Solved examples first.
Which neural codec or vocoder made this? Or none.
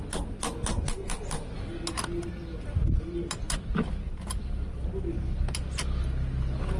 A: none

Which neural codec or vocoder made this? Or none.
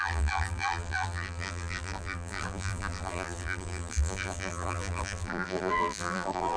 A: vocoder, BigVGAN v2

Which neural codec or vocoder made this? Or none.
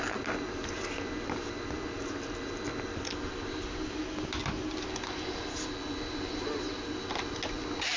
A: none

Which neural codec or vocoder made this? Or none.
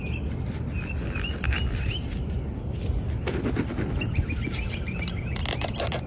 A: none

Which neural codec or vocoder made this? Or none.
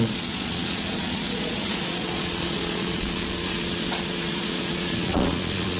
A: vocoder, Vocos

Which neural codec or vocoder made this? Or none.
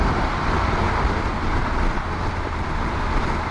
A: none